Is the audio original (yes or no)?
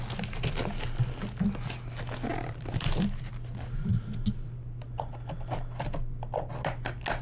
yes